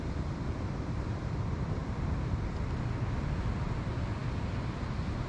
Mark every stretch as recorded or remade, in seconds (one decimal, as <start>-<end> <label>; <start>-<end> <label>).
0.0-1.8 recorded; 1.8-2.4 remade; 2.4-5.3 recorded